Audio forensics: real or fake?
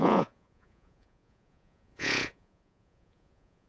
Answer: fake